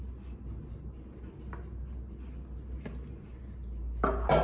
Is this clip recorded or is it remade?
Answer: recorded